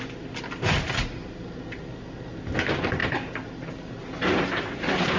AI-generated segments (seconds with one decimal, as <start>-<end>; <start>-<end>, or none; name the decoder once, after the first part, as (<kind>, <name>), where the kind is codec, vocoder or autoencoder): none